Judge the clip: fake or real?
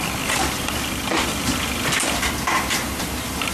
real